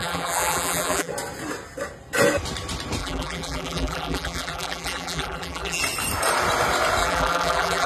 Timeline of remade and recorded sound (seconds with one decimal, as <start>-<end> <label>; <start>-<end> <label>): 0.0-1.1 remade; 1.1-3.0 recorded; 3.0-5.8 remade; 5.8-7.0 recorded; 7.0-7.9 remade